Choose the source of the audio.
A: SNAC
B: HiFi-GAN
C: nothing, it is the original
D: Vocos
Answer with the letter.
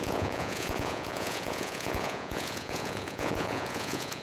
D